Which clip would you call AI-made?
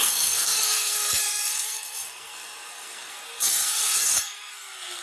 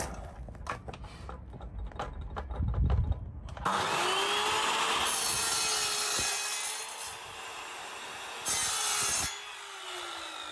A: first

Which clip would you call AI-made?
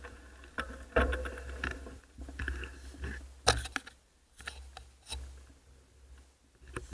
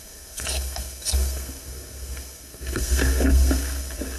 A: second